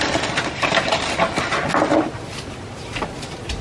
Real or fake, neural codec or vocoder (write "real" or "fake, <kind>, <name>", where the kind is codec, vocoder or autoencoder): real